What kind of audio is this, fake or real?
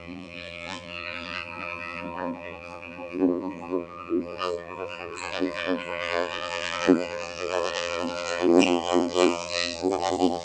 fake